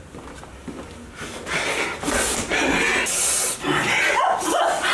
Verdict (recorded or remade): recorded